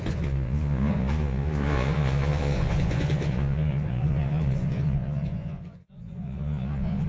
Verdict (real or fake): fake